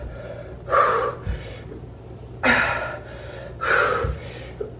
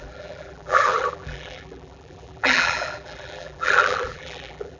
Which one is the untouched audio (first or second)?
first